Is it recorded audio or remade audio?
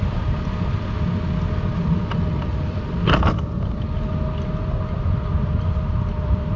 recorded